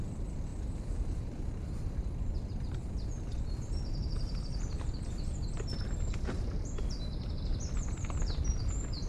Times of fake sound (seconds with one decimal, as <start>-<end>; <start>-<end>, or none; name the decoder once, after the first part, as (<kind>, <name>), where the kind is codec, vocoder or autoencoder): none